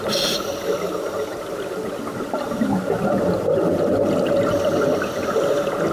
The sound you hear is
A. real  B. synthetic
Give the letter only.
A